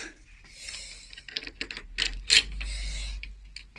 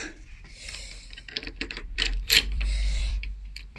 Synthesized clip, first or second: second